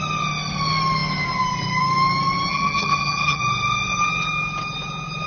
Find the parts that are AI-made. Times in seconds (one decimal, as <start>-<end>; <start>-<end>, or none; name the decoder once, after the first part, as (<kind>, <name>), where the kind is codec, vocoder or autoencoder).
2.5-3.4 (vocoder, HiFi-GAN)